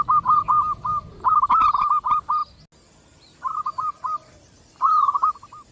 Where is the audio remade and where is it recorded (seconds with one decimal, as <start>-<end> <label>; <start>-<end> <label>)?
0.0-0.9 recorded; 0.9-1.5 remade; 1.5-5.7 recorded